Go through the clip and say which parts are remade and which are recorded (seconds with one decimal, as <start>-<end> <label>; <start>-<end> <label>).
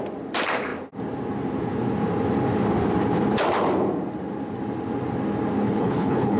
0.0-5.6 recorded; 5.6-6.4 remade